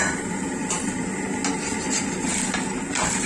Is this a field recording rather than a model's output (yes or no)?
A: yes